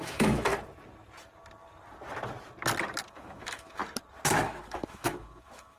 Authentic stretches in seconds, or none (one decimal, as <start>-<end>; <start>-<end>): 0.5-3.1; 3.8-4.4